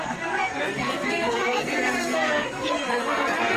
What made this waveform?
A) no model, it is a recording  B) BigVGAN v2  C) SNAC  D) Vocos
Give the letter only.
C